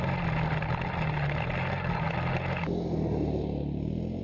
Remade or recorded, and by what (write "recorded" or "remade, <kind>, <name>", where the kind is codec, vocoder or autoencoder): recorded